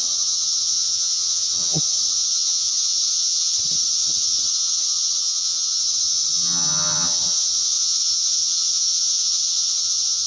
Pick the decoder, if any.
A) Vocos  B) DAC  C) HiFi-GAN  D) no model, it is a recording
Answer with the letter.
C